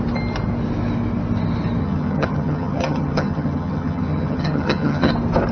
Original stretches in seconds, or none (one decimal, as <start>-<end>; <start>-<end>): 0.0-1.8; 5.1-5.5